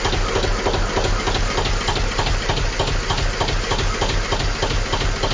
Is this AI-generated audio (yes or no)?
no